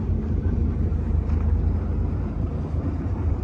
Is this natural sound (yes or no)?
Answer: no